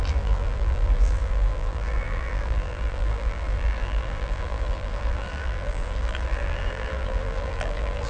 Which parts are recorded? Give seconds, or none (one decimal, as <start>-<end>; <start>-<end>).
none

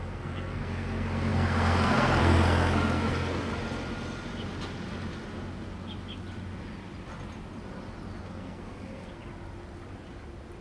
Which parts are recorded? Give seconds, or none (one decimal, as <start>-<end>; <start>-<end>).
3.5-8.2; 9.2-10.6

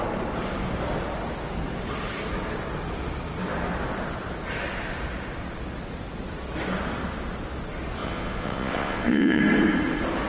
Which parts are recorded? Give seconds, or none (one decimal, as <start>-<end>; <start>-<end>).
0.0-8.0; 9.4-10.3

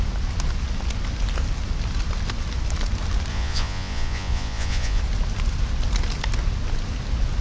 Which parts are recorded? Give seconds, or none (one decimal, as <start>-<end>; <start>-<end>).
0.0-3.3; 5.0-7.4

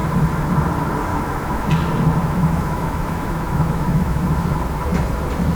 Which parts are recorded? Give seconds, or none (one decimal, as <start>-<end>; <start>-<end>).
0.0-1.1; 1.7-2.2; 4.3-5.5

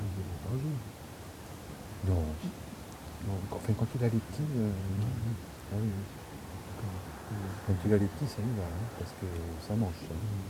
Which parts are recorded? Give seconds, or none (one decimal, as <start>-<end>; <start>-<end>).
none

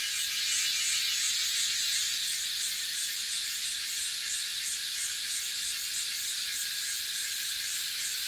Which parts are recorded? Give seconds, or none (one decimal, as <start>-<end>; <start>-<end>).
0.0-7.2